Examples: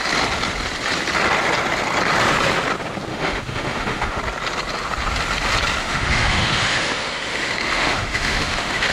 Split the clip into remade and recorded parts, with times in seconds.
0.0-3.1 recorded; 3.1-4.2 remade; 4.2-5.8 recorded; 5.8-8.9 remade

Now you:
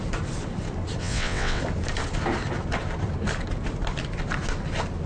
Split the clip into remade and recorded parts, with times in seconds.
0.0-1.0 recorded; 1.0-1.6 remade; 1.6-5.1 recorded

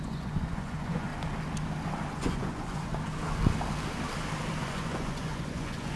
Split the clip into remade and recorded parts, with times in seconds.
0.0-1.1 remade; 1.1-2.1 recorded; 2.1-2.9 remade; 2.9-4.6 recorded; 4.6-6.0 remade

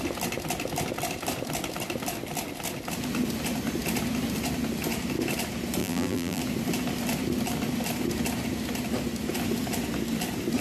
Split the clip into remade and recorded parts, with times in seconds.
0.0-5.8 recorded; 5.8-6.4 remade; 6.4-10.6 recorded

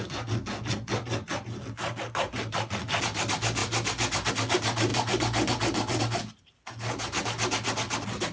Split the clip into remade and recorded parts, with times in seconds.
0.0-8.3 recorded